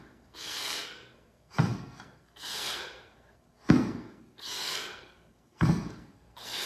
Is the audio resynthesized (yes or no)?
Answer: yes